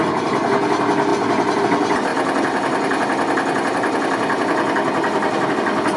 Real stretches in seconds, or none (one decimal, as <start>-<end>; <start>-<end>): 0.0-6.0